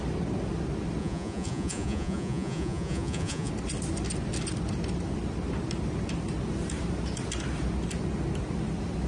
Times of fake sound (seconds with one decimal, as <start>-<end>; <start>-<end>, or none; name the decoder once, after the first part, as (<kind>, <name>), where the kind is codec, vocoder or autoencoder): 1.0-3.5 (vocoder, Vocos)